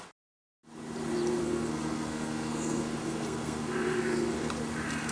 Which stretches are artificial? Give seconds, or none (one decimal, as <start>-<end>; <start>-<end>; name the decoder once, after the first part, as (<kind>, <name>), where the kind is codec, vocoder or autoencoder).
1.4-4.5 (codec, SNAC)